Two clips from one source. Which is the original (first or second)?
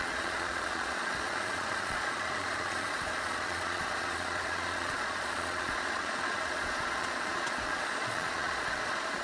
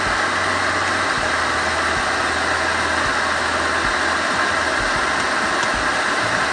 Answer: second